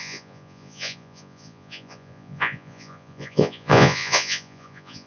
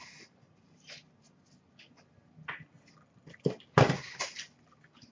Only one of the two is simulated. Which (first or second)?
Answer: first